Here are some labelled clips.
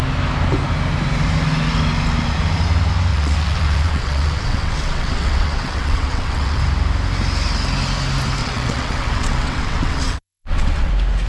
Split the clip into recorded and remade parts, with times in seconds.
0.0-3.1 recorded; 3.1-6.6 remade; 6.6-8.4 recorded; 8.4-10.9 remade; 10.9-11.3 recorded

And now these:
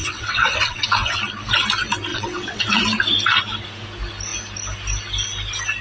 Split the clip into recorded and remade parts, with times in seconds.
0.0-1.2 remade; 1.2-2.1 recorded; 2.1-2.8 remade; 2.8-5.8 recorded